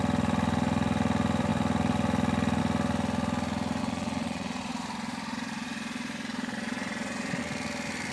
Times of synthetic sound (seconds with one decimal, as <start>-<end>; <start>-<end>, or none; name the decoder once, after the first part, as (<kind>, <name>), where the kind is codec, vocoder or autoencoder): 3.8-7.4 (vocoder, Vocos)